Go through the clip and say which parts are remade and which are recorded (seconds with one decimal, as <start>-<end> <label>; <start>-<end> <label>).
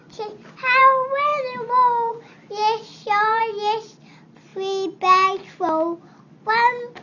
0.0-2.9 recorded; 2.9-3.4 remade; 3.4-7.0 recorded